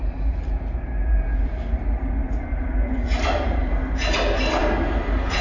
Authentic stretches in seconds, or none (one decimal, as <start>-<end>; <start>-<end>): 0.0-5.4

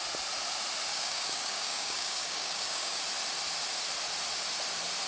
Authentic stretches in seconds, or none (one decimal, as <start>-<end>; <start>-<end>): 0.0-0.9; 3.0-5.1